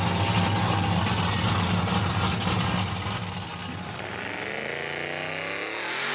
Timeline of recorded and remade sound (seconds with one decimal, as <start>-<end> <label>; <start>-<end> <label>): 0.0-6.1 recorded